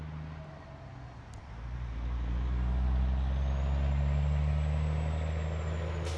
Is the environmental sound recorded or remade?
recorded